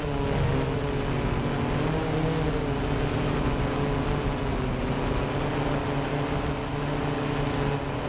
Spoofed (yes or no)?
no